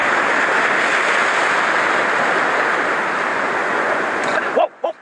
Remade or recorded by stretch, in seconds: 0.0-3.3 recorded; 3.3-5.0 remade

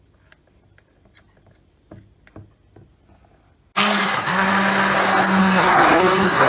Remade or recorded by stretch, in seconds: 0.0-4.0 recorded; 4.0-4.5 remade; 4.5-5.4 recorded; 5.4-6.5 remade

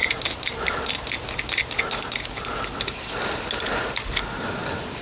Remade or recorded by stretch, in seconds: 0.0-5.0 recorded

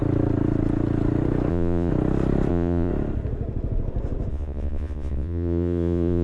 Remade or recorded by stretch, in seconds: 0.0-1.5 recorded; 1.5-1.9 remade; 1.9-2.5 recorded; 2.5-2.9 remade; 2.9-4.3 recorded; 4.3-6.2 remade